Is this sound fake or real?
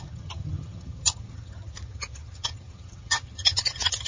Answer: fake